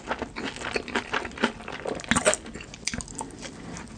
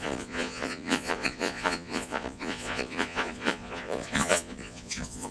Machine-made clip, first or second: second